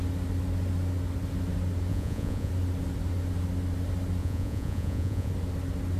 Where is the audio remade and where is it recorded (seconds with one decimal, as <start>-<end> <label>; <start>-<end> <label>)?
0.0-1.9 recorded; 1.9-2.5 remade; 2.5-4.2 recorded; 4.2-5.3 remade; 5.3-6.0 recorded